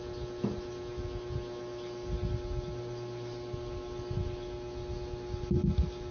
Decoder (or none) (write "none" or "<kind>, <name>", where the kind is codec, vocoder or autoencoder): none